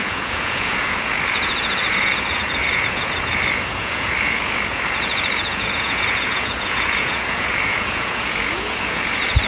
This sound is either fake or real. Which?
fake